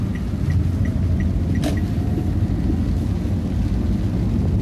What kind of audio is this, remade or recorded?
recorded